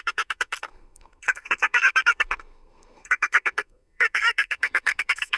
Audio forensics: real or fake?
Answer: fake